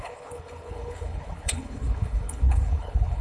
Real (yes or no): no